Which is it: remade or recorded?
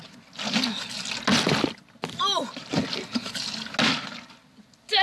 recorded